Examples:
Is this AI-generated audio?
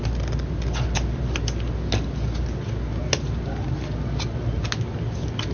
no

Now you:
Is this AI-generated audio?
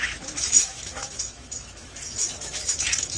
yes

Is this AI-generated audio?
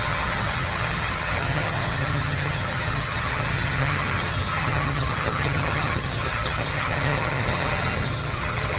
yes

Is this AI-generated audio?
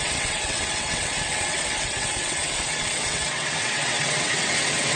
yes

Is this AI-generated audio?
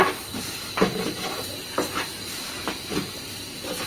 yes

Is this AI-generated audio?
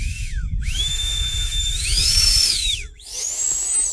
yes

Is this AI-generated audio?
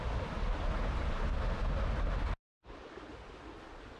no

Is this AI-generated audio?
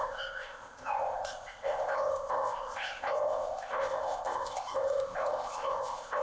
yes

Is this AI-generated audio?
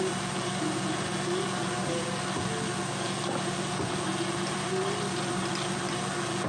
no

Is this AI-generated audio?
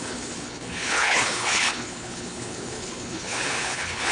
yes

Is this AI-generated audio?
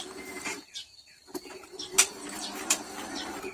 yes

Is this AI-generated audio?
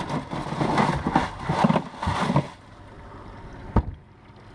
no